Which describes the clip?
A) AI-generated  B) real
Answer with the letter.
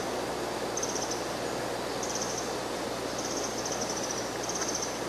B